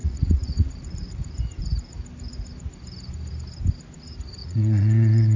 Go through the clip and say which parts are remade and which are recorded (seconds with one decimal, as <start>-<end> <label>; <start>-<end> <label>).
0.0-1.2 remade; 1.2-4.4 recorded; 4.4-5.4 remade